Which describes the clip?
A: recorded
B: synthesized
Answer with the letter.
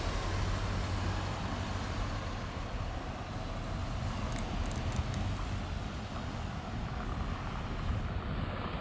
A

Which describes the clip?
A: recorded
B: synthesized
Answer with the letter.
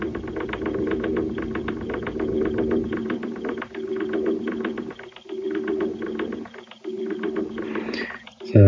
A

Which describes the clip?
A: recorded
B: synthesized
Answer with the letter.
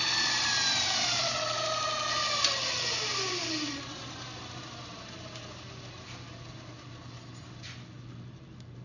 A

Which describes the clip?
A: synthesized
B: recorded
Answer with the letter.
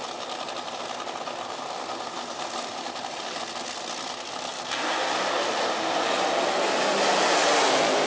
B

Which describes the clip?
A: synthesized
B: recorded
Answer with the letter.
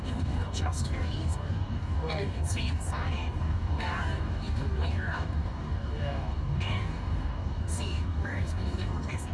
A